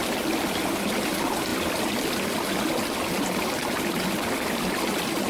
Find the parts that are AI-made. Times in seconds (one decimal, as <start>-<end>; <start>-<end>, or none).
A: none